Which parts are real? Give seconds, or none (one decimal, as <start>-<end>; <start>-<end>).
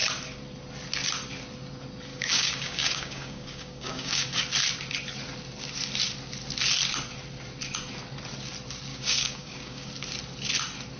0.0-2.1; 4.3-8.9; 9.9-11.0